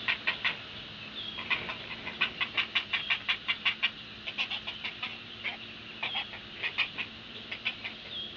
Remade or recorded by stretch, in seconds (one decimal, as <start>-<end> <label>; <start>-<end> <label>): 0.0-8.4 recorded